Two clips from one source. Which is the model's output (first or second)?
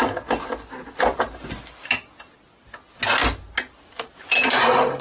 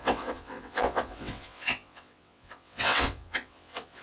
second